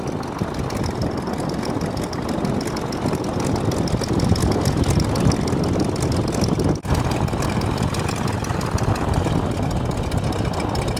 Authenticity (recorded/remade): recorded